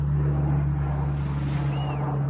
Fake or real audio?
real